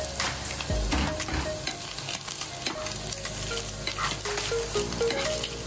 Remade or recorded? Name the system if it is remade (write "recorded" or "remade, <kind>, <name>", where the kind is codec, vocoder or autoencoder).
recorded